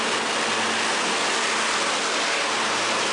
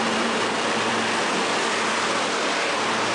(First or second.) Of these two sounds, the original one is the first